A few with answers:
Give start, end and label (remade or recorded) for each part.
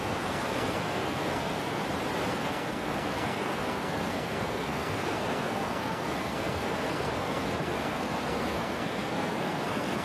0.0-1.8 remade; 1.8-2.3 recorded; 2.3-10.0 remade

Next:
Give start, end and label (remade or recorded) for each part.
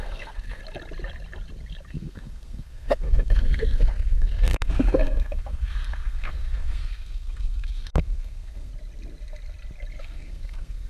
0.0-0.6 remade; 0.6-1.9 recorded; 1.9-8.7 remade; 8.7-10.0 recorded; 10.0-10.9 remade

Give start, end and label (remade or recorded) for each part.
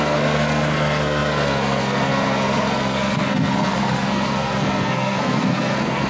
0.0-6.1 remade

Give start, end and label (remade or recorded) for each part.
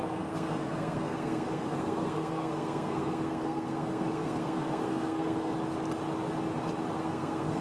0.0-5.5 remade; 5.5-7.0 recorded; 7.0-7.6 remade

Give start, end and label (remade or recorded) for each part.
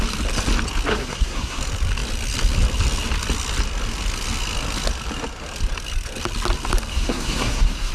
0.0-0.9 recorded; 0.9-1.6 remade; 1.6-6.9 recorded; 6.9-7.9 remade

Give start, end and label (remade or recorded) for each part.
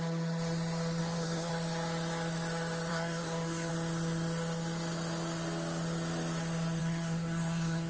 0.0-1.0 recorded; 1.0-1.5 remade; 1.5-2.9 recorded; 2.9-3.7 remade; 3.7-6.8 recorded; 6.8-7.9 remade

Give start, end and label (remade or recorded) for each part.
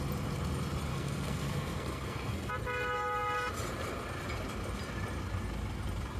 0.0-0.9 recorded; 0.9-2.5 remade; 2.5-6.2 recorded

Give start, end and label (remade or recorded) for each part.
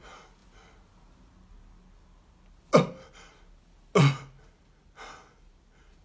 0.0-6.0 recorded